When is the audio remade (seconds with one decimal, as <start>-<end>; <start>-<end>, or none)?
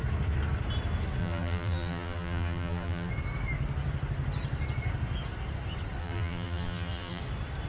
1.2-3.1; 6.0-7.2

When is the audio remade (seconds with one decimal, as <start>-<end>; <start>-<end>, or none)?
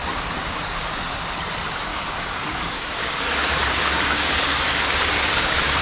0.0-1.3; 1.9-5.8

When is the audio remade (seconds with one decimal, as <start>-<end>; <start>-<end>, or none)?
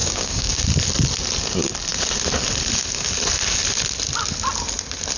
0.0-0.6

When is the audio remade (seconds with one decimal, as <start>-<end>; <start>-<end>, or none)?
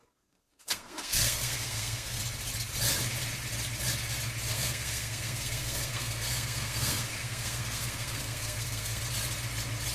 0.0-2.2; 4.5-9.0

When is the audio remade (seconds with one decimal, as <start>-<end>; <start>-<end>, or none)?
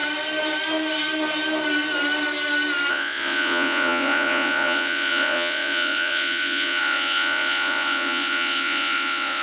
2.9-9.4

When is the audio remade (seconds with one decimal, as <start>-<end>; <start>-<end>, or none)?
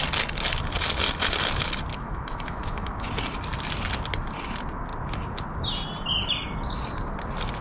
1.9-3.1